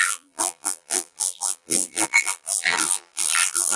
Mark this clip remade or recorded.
remade